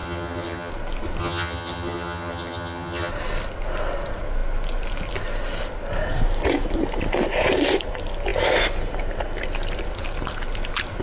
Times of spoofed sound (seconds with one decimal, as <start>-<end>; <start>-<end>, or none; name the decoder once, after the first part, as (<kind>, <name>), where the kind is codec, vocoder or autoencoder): 0.0-0.7 (vocoder, HiFi-GAN); 1.2-3.1